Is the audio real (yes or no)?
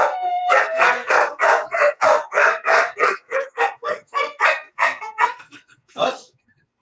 no